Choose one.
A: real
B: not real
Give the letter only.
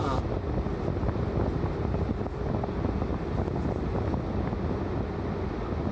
A